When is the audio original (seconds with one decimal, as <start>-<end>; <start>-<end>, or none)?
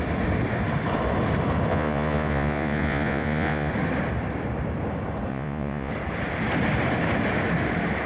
0.0-1.7; 3.7-5.3; 5.9-8.1